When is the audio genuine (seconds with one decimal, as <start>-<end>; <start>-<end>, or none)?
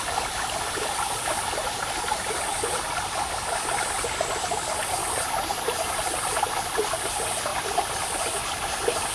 0.0-9.1